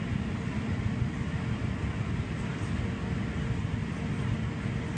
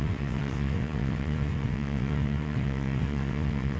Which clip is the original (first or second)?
first